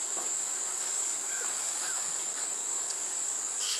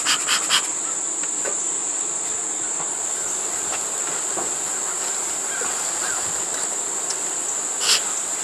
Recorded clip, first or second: second